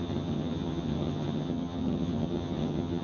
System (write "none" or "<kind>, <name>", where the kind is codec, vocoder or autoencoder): vocoder, HiFi-GAN